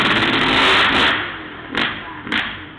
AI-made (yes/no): no